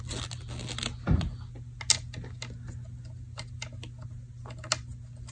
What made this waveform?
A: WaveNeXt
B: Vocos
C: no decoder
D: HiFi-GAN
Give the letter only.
C